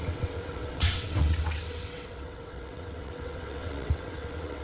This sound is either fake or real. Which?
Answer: fake